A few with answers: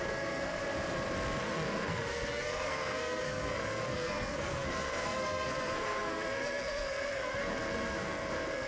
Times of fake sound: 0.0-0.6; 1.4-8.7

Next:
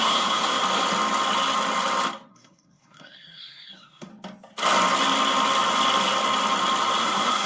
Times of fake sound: 0.0-0.6; 2.3-4.1; 7.0-7.5

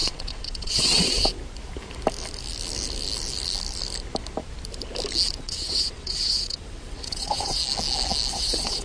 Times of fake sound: 0.0-1.4; 5.4-7.6; 8.3-8.8

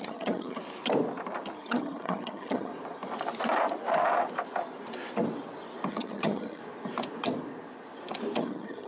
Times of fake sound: 0.0-0.6; 1.6-2.7; 5.9-6.6; 8.4-8.9

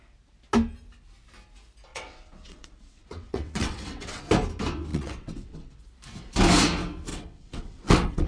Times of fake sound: 1.9-4.2; 4.9-5.8; 7.1-8.3

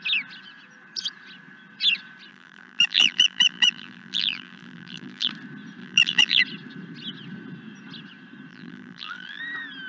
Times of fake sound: 2.3-5.3; 5.8-6.4; 8.5-9.4

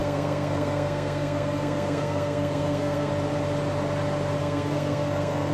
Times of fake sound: 0.0-3.1; 4.4-5.5

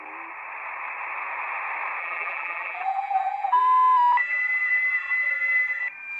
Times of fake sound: 2.0-3.6; 4.2-5.8